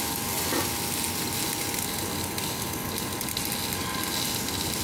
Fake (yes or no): no